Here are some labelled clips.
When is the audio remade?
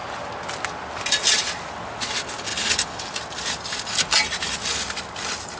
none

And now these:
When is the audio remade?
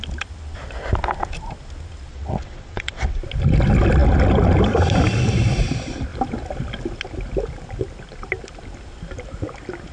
2.1-3.2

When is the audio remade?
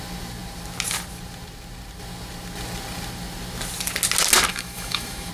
4.5-5.3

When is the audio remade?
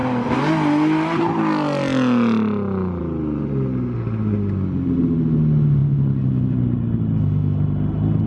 none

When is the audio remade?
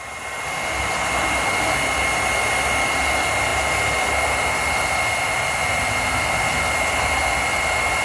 none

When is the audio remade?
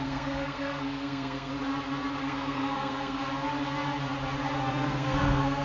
0.0-1.5; 2.2-3.2; 4.7-5.6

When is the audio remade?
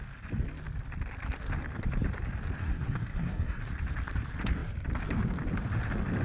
2.6-3.6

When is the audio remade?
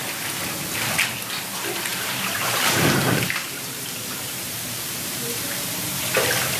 1.9-5.9